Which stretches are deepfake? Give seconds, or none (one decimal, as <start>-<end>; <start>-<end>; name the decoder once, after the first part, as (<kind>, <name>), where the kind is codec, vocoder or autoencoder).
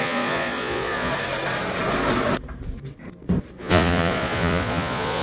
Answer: 0.0-1.1 (vocoder, Vocos); 3.6-5.2